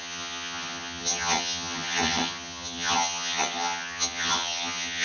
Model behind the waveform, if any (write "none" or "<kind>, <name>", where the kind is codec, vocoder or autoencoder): vocoder, HiFi-GAN